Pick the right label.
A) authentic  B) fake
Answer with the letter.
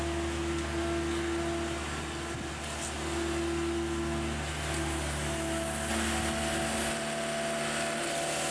A